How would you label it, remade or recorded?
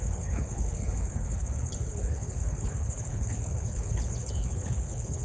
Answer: remade